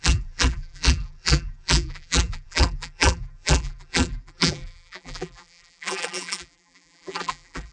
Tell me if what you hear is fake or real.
fake